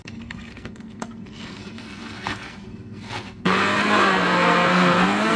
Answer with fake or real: fake